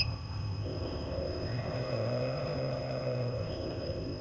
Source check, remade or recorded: remade